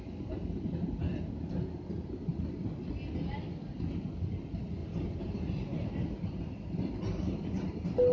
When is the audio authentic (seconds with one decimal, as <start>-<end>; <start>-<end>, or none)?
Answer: 0.0-2.3; 2.9-4.8; 6.4-8.1